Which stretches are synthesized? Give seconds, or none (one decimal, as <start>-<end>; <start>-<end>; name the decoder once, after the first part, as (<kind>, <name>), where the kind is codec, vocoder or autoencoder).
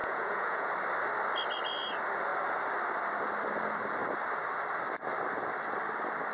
0.0-0.7 (vocoder, Vocos)